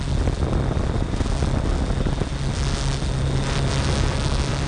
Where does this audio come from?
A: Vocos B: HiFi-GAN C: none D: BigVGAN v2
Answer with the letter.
C